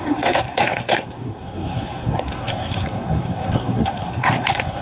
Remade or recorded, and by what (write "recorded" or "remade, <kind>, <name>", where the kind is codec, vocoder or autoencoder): remade, codec, SNAC